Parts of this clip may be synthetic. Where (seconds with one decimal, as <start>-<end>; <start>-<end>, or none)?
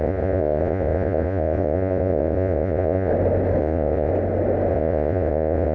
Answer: 0.0-3.1; 3.6-4.1; 4.7-5.7